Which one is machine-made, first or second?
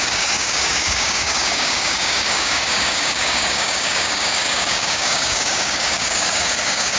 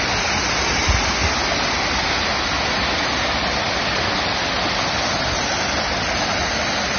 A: first